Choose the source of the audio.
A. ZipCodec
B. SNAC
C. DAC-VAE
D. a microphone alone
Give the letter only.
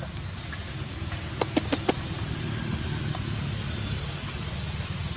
D